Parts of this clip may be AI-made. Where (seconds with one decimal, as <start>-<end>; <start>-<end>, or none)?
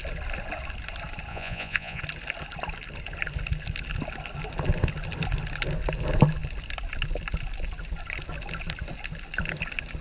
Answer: 1.3-2.0